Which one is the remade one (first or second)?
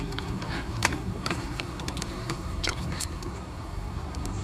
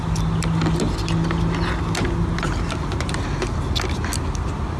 first